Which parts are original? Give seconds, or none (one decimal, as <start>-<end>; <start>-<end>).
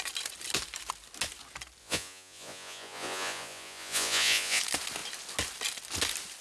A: 0.0-1.8; 4.6-6.4